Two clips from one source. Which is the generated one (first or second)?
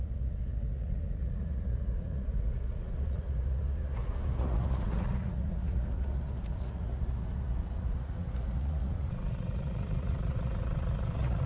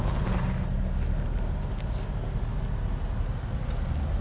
first